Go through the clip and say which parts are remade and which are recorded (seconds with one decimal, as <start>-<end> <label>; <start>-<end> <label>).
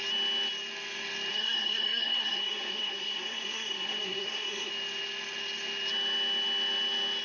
0.0-1.3 recorded; 1.3-4.7 remade; 4.7-7.2 recorded